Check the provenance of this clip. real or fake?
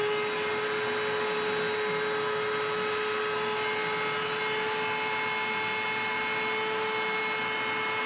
real